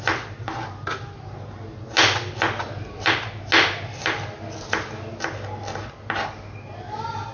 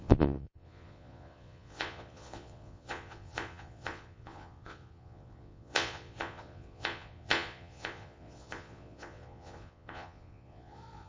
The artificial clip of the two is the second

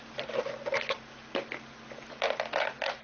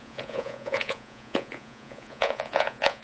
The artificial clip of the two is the second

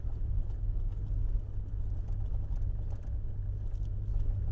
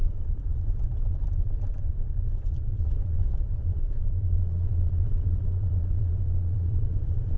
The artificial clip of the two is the second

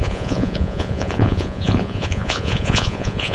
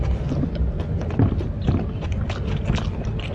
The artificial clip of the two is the first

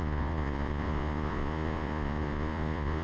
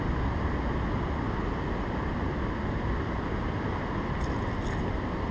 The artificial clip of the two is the first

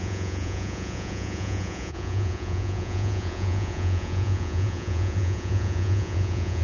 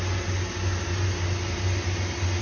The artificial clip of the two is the first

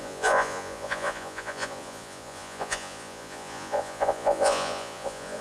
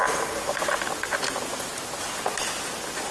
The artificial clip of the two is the first